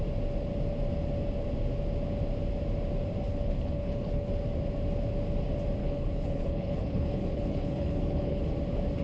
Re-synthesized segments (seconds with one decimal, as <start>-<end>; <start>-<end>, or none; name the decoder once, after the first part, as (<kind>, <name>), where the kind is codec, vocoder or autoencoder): 3.3-4.3 (codec, HILCodec); 5.8-8.5